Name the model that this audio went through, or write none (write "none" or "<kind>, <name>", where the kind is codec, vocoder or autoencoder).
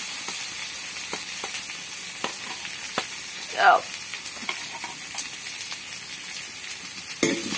none